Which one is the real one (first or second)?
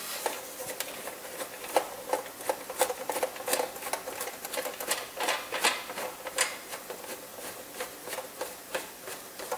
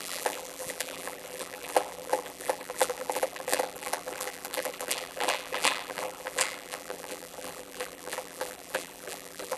first